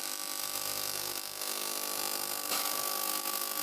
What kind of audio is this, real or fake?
fake